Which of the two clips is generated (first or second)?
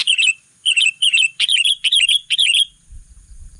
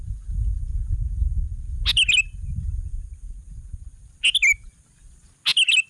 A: first